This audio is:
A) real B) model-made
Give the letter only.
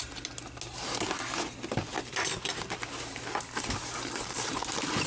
A